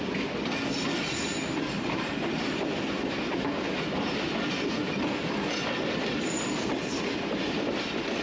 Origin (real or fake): real